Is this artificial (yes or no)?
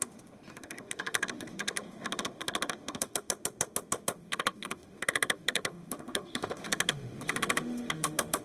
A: yes